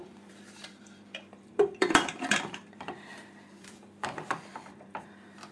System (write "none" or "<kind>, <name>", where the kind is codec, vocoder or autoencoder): vocoder, BigVGAN v2